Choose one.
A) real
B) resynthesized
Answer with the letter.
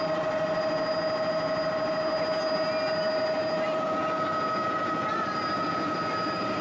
A